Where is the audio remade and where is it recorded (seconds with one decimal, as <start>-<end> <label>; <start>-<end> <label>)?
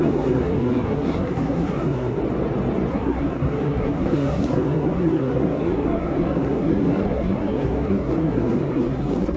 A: 0.0-2.2 remade; 2.2-2.9 recorded; 2.9-9.4 remade